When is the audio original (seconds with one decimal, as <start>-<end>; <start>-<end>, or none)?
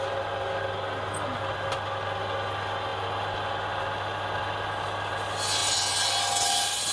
0.0-6.9